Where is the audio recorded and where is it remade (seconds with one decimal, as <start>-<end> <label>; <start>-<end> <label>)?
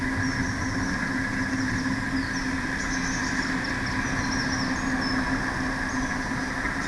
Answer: 0.0-6.9 recorded